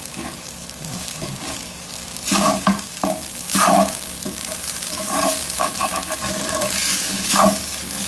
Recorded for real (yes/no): no